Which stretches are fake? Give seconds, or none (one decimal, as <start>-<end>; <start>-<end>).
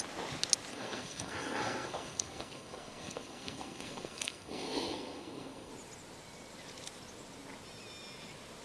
0.7-5.7